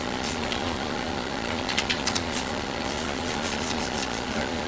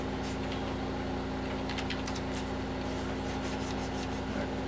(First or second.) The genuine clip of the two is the second